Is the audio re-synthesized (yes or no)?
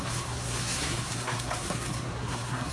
yes